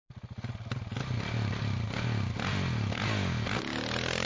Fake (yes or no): no